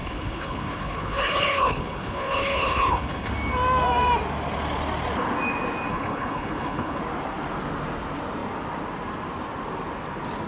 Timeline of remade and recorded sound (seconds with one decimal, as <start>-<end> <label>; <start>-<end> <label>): 0.0-3.3 remade; 3.3-5.9 recorded; 5.9-7.0 remade; 7.0-10.5 recorded